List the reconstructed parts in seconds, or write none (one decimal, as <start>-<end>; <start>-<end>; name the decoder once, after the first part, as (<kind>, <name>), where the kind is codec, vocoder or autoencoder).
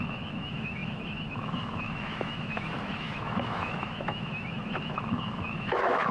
0.0-6.1 (autoencoder, DAC-VAE)